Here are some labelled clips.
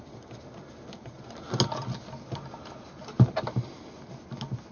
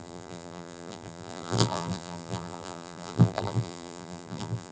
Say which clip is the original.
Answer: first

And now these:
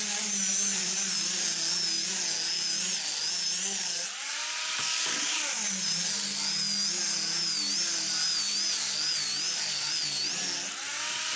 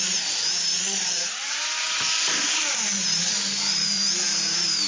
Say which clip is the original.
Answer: first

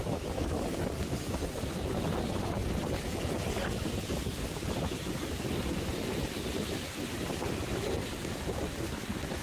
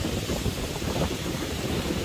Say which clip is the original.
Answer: first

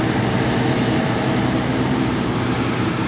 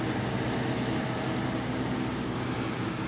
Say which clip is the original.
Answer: second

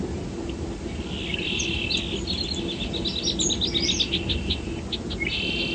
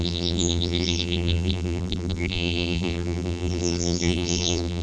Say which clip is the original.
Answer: first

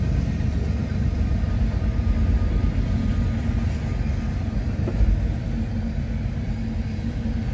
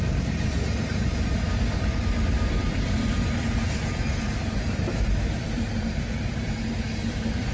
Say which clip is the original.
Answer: first